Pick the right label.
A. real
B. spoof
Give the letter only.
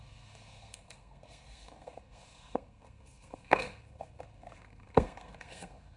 B